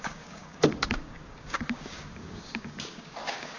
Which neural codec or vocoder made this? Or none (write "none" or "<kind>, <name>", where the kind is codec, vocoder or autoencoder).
codec, DAC